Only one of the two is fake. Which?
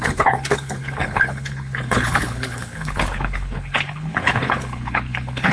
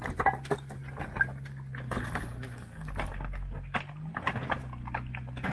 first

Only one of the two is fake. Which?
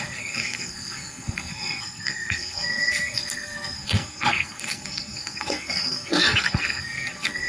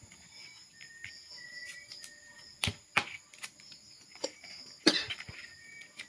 first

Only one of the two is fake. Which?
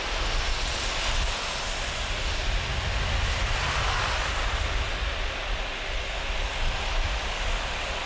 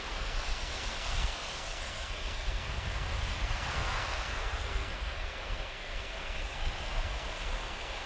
second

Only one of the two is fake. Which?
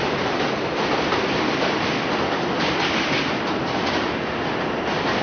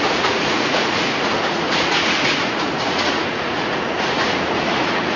second